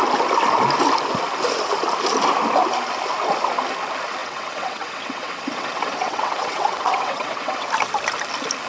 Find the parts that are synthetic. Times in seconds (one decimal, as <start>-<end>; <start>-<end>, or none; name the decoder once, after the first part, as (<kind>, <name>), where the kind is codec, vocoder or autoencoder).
4.2-7.7 (vocoder, WaveNeXt)